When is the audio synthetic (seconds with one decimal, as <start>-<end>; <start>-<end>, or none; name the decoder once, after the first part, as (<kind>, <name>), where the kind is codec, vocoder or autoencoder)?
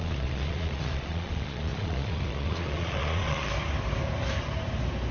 0.0-3.5 (vocoder, Vocos)